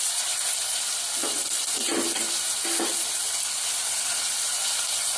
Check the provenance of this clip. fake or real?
real